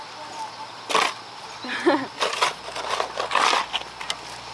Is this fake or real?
real